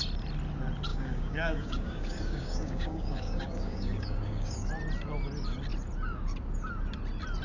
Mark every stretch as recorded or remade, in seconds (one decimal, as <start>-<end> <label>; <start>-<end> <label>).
0.0-0.9 recorded; 0.9-4.7 remade; 4.7-7.4 recorded